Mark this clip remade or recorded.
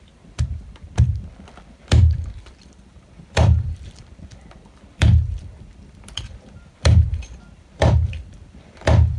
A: remade